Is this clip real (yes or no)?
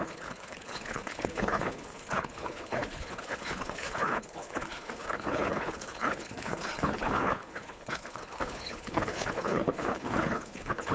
no